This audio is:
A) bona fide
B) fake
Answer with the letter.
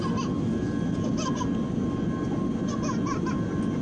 A